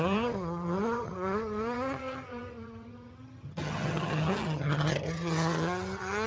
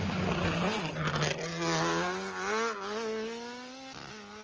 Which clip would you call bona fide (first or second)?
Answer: second